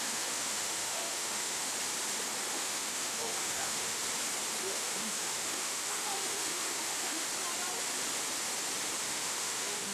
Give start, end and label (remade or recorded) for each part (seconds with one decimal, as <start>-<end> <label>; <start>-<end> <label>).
0.0-1.7 remade; 1.7-2.5 recorded; 2.5-4.0 remade; 4.0-4.6 recorded; 4.6-7.3 remade; 7.3-9.0 recorded; 9.0-9.9 remade